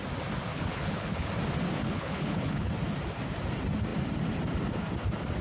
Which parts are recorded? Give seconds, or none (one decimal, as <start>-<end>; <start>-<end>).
0.0-0.5; 1.3-1.8; 2.7-5.4

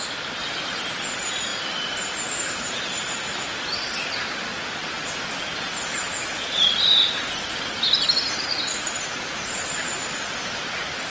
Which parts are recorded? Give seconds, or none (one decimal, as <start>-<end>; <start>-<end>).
0.0-11.1